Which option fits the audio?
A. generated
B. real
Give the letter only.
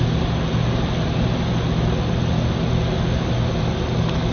B